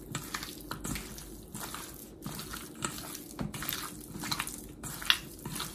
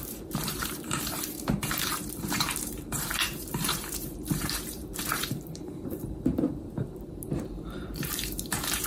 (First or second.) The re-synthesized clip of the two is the second